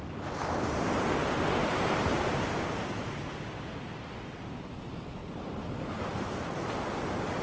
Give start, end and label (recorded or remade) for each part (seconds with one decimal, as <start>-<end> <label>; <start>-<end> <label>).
0.0-1.2 recorded; 1.2-2.1 remade; 2.1-5.2 recorded; 5.2-6.8 remade; 6.8-7.4 recorded

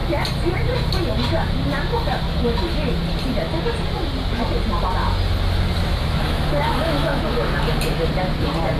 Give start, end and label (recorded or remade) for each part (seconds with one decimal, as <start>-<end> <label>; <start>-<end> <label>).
0.0-5.9 recorded; 5.9-7.2 remade; 7.2-8.8 recorded

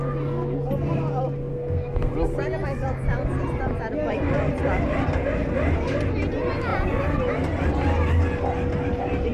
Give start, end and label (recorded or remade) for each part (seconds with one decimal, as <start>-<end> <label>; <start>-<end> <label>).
0.0-1.5 recorded; 1.5-2.1 remade; 2.1-9.3 recorded

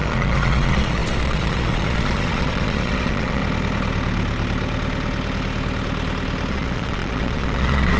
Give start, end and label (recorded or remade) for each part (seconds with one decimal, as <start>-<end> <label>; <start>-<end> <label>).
0.0-3.4 remade; 3.4-6.5 recorded; 6.5-8.0 remade

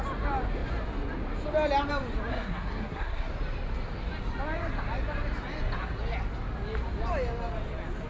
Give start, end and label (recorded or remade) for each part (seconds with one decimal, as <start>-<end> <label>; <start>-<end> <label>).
0.0-2.3 recorded; 2.3-3.3 remade; 3.3-8.1 recorded

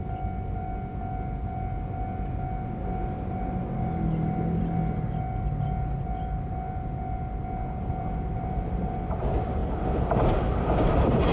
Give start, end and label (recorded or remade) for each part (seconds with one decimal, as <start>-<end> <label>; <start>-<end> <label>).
0.0-11.3 recorded

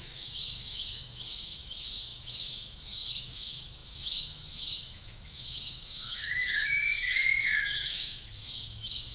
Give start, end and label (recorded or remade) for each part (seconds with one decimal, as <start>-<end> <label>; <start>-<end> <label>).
0.0-9.1 remade

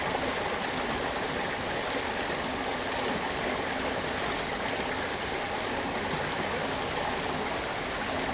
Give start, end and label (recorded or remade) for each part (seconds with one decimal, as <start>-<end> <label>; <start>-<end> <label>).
0.0-8.3 recorded